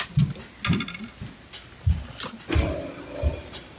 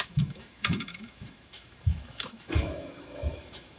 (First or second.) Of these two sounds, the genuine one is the first